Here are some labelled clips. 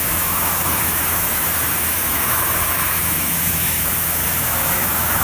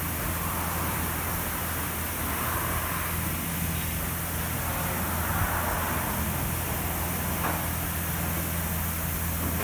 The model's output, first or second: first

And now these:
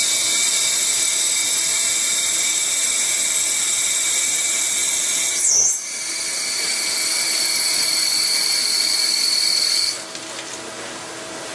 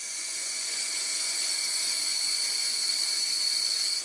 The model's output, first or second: second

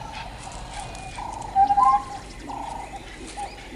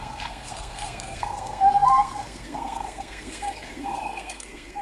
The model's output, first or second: second